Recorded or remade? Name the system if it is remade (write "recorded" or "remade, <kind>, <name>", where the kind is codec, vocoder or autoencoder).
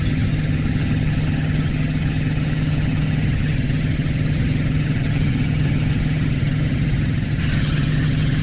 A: remade, vocoder, HiFi-GAN